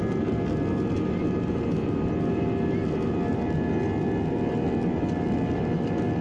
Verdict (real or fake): real